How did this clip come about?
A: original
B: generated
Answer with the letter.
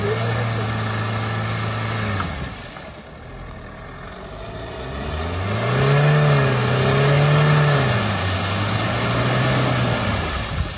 A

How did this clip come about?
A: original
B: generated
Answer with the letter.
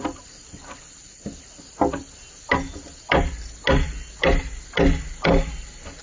A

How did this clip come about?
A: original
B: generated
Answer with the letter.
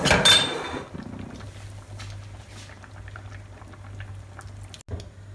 A